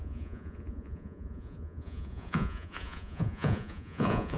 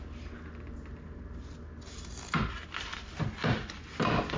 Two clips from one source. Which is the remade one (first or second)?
first